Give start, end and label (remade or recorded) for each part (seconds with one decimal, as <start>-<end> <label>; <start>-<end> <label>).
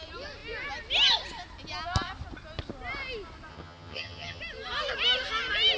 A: 0.0-3.5 recorded; 3.5-4.4 remade; 4.4-5.8 recorded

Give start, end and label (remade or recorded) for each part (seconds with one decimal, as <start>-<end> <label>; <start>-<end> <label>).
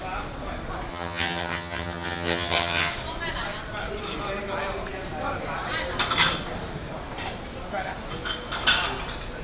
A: 0.0-0.9 recorded; 0.9-2.9 remade; 2.9-9.4 recorded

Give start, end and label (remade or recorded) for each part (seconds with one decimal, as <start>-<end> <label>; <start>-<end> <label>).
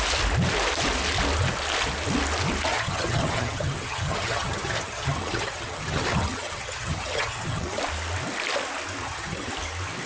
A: 0.0-2.7 recorded; 2.7-7.8 remade; 7.8-9.0 recorded; 9.0-9.5 remade; 9.5-10.1 recorded